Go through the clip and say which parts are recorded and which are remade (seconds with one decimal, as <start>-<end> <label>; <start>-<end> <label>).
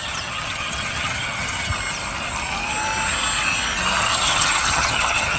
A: 0.0-1.7 remade; 1.7-4.0 recorded; 4.0-5.4 remade